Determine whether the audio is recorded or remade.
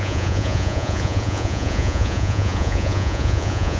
remade